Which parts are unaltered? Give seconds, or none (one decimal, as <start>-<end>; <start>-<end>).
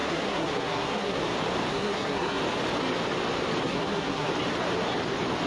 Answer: 1.2-1.7; 2.4-3.6; 4.3-5.5